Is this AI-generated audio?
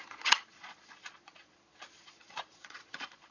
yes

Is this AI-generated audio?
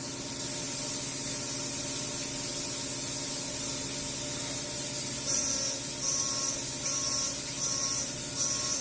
no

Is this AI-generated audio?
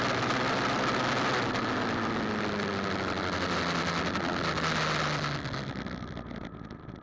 no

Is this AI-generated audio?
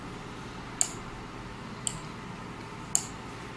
no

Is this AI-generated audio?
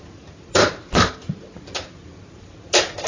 no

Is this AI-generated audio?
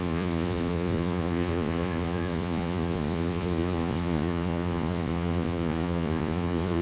yes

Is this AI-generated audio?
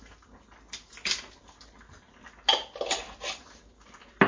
no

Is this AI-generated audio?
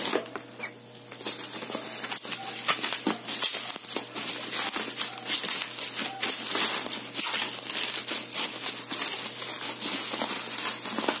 no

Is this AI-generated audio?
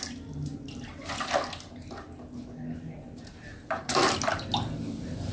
no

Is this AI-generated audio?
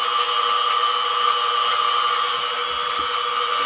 no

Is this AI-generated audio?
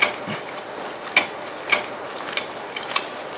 no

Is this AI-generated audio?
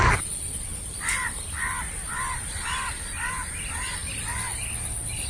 no